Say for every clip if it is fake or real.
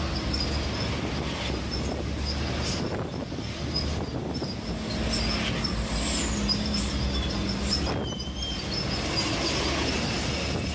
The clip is real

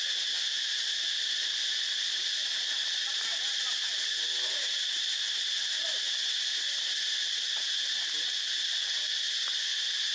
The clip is real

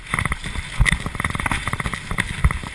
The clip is real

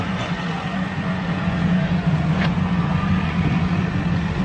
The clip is fake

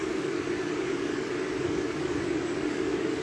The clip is fake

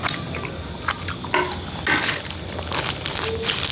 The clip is real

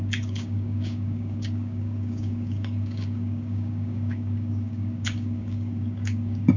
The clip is fake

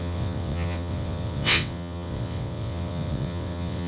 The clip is fake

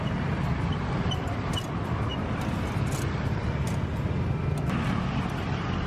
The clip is real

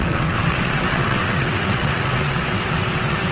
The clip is fake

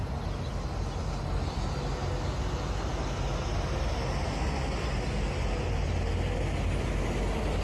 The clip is real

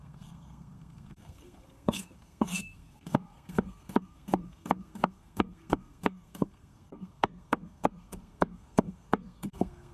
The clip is fake